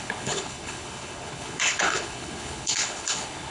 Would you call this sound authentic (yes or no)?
no